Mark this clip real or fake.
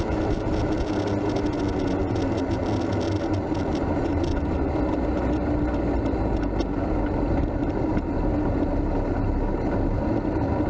real